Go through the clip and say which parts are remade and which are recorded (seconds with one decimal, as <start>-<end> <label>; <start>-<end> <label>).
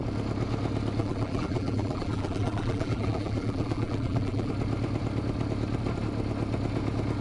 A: 0.0-1.0 recorded; 1.0-4.5 remade; 4.5-7.2 recorded